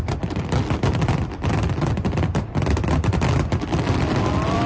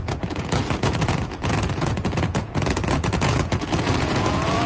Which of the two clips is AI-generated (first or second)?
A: second